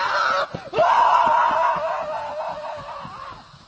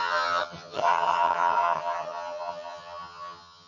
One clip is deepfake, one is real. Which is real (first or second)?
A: first